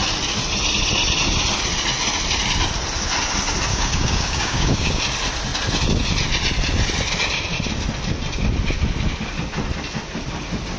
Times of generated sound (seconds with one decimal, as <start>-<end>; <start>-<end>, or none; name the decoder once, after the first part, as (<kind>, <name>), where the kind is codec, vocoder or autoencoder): 3.7-5.0 (codec, DAC)